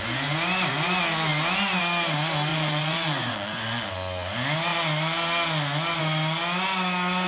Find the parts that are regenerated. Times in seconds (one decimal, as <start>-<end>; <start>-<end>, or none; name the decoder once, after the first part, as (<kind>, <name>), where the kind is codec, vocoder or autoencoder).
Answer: 2.5-3.9 (vocoder, Vocos)